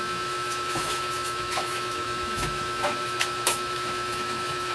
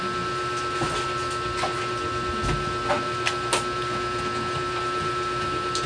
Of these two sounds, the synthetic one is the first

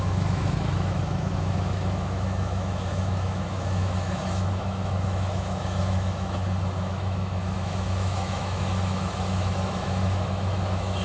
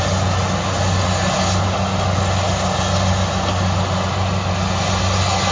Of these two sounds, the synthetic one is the first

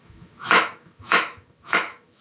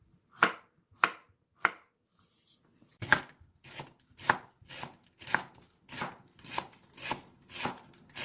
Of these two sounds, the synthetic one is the first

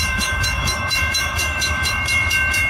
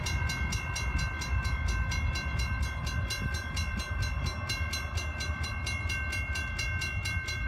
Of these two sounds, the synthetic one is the first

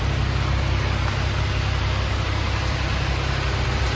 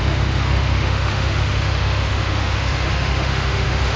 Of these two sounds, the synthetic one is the second